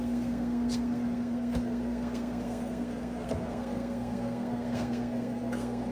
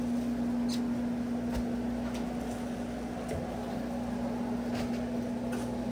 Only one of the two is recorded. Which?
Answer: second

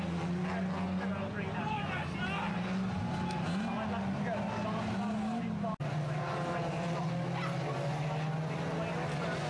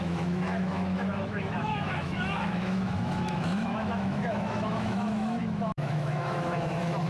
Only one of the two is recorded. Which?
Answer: first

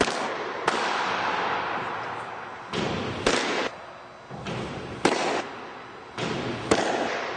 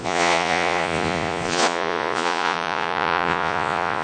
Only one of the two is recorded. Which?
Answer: first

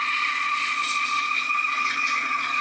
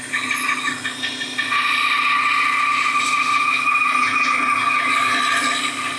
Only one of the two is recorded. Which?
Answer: second